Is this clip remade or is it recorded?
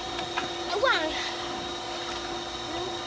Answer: recorded